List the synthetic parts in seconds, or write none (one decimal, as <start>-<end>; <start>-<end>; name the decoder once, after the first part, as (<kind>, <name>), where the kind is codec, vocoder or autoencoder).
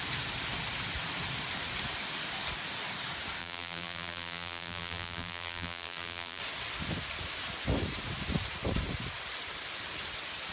3.4-6.4 (vocoder, BigVGAN v2)